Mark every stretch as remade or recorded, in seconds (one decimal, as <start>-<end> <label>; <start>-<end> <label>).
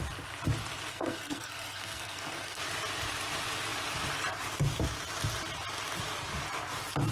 0.0-0.9 recorded; 0.9-2.6 remade; 2.6-7.1 recorded